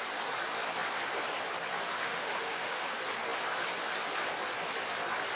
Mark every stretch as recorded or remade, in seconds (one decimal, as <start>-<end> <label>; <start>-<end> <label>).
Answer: 0.0-2.0 recorded; 2.0-2.9 remade; 2.9-5.4 recorded